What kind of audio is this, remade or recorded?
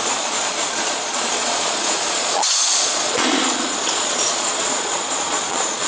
remade